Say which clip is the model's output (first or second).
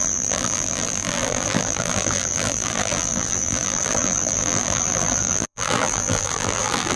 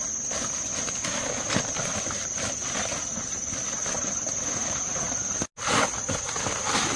first